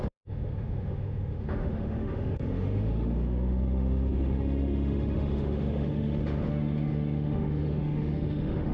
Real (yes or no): no